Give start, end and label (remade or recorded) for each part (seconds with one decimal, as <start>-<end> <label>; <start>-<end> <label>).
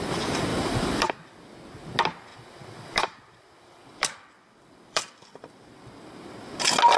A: 0.0-0.5 recorded; 0.5-1.1 remade; 1.1-2.3 recorded; 2.3-5.7 remade; 5.7-7.0 recorded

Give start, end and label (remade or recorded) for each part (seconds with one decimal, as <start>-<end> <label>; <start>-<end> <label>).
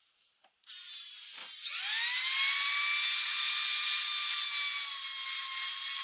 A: 0.0-6.0 recorded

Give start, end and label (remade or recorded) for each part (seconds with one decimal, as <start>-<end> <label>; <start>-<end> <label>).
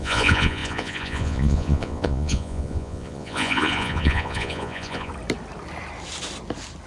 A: 0.0-5.1 remade; 5.1-6.9 recorded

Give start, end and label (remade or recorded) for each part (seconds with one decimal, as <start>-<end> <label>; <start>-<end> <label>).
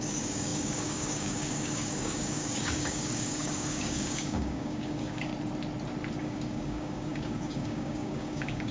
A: 0.0-5.3 remade; 5.3-6.2 recorded; 6.2-8.7 remade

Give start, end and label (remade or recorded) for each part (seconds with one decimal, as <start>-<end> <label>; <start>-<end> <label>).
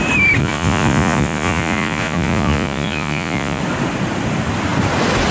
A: 0.0-0.4 recorded; 0.4-3.6 remade; 3.6-5.3 recorded